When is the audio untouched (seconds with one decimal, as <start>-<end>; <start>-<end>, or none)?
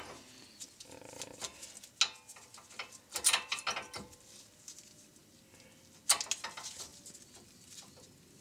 0.0-8.4